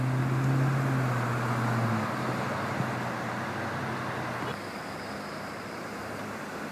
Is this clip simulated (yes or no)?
no